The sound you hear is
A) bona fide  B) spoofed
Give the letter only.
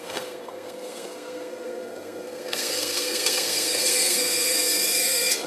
B